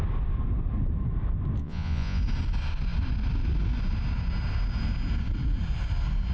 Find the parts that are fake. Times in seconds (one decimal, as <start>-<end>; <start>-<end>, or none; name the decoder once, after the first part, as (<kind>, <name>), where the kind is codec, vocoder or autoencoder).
1.6-2.2 (vocoder, Vocos)